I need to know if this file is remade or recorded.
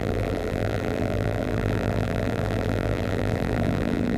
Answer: remade